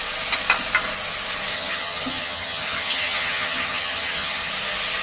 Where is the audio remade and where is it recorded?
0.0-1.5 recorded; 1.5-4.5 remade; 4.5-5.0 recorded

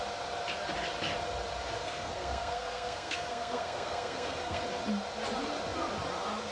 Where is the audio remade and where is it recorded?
0.0-1.8 recorded; 1.8-4.6 remade; 4.6-6.5 recorded

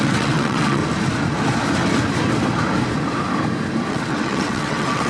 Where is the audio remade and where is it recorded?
0.0-0.8 remade; 0.8-3.9 recorded; 3.9-5.1 remade